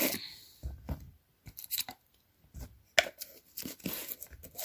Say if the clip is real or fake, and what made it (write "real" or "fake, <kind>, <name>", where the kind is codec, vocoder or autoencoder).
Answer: real